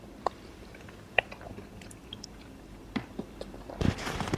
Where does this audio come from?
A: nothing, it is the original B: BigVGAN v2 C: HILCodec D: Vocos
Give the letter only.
B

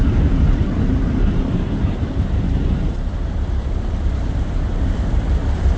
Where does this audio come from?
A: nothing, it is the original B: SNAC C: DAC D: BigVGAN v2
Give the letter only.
D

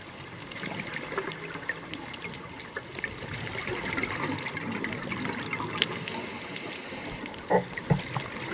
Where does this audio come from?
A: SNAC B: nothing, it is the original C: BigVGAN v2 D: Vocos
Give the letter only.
B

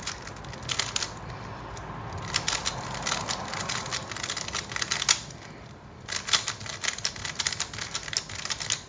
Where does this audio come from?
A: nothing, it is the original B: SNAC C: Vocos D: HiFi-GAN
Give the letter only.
A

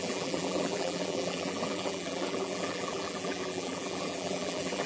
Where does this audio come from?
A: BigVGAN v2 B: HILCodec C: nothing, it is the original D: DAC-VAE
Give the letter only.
A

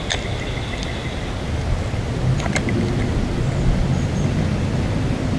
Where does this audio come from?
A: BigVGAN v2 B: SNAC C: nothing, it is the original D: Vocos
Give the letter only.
C